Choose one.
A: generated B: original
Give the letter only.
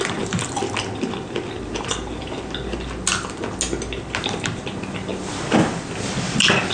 B